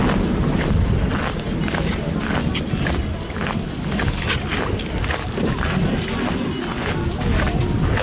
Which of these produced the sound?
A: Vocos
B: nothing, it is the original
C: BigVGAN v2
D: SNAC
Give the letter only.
B